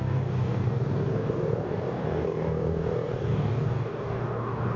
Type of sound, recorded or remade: remade